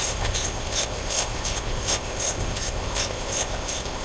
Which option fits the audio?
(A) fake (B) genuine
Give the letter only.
A